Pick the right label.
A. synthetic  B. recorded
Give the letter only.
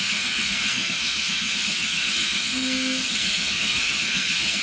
A